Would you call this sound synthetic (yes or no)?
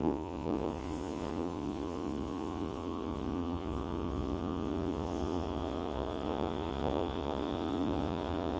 yes